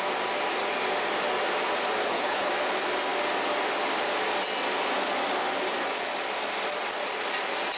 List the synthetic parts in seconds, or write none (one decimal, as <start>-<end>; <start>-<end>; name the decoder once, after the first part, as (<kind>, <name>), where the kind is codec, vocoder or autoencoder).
2.0-2.5 (codec, HILCodec)

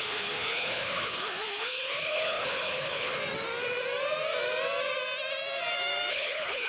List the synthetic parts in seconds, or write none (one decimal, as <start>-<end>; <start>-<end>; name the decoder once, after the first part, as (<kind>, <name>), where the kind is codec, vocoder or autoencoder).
0.0-3.2 (codec, HILCodec); 6.1-6.7